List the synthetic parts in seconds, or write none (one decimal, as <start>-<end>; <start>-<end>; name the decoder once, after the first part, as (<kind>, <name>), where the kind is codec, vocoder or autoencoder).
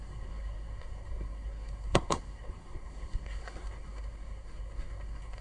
0.0-5.4 (codec, SNAC)